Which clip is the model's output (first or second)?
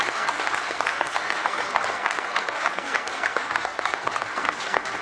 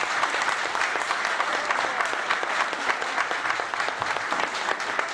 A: first